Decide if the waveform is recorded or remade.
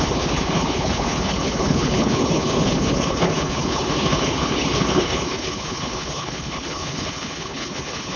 remade